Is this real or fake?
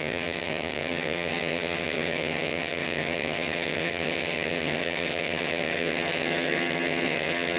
fake